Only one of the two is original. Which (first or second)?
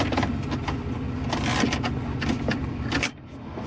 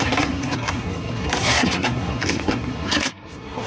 first